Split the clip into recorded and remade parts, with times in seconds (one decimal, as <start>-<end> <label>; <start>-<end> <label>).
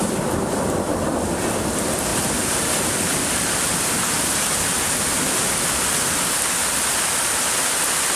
0.0-8.2 remade